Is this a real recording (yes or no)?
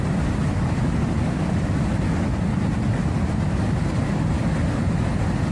yes